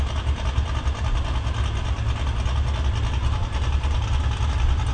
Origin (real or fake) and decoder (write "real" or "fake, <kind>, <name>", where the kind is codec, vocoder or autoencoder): real